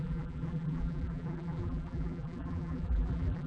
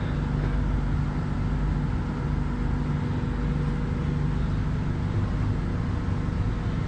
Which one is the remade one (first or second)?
first